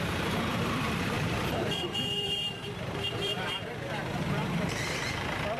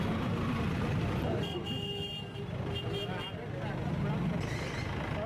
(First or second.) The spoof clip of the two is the first